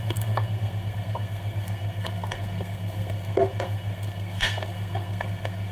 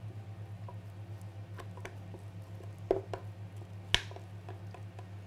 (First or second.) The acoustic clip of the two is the second